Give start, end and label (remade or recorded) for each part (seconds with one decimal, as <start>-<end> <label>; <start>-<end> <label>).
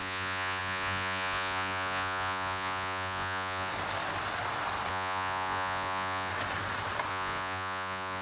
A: 0.0-3.7 remade; 3.7-4.9 recorded; 4.9-6.3 remade; 6.3-7.1 recorded; 7.1-8.2 remade